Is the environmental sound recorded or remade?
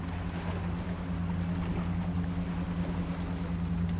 recorded